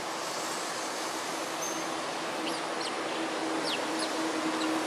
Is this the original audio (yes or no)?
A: yes